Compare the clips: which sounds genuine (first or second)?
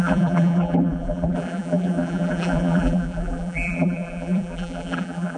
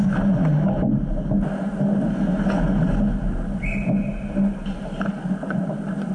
second